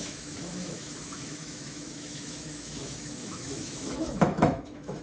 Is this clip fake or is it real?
fake